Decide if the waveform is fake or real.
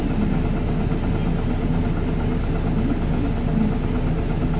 real